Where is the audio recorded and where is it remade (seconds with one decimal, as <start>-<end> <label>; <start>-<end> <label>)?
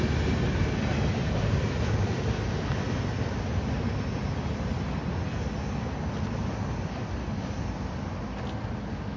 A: 0.0-9.2 recorded